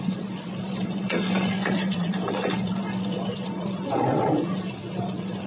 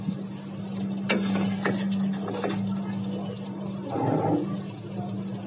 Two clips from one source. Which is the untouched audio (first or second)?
second